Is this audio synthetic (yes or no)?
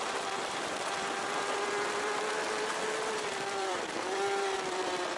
yes